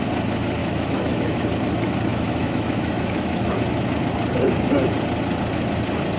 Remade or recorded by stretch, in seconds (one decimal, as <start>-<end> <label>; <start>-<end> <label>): 0.0-0.6 recorded; 0.6-1.4 remade; 1.4-2.1 recorded; 2.1-3.5 remade; 3.5-6.2 recorded